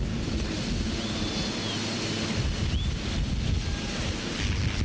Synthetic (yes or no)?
no